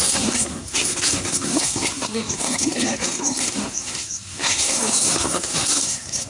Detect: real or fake fake